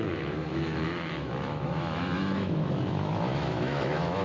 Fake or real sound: fake